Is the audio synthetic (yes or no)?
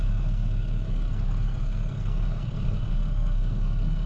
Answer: yes